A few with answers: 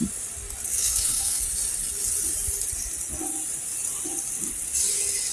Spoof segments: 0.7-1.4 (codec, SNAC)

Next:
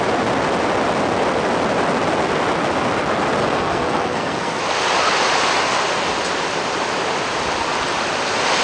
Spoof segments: 3.4-4.6 (codec, SNAC)

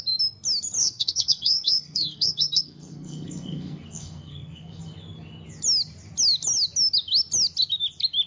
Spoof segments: 0.8-4.8 (codec, SNAC)

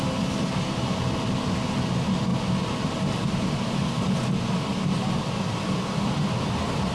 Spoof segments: none

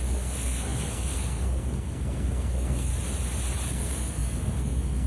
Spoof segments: 0.0-2.9 (codec, SNAC); 3.7-5.1

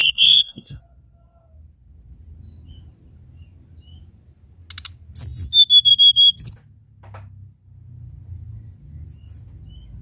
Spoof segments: 0.0-0.8 (codec, SNAC)